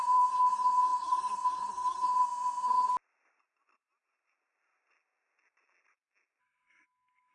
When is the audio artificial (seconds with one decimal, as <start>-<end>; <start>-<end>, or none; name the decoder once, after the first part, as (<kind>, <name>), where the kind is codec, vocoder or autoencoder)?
0.0-2.9 (codec, SNAC); 6.4-7.3